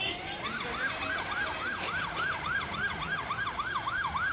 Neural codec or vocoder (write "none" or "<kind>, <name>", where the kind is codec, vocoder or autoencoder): none